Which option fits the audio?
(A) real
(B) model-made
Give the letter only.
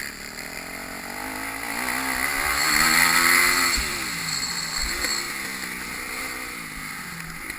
A